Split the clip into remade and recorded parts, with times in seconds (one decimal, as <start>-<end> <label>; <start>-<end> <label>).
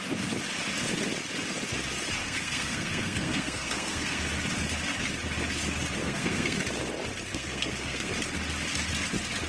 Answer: 0.0-2.2 recorded; 2.2-4.2 remade; 4.2-6.0 recorded; 6.0-6.6 remade; 6.6-7.3 recorded; 7.3-8.1 remade; 8.1-9.5 recorded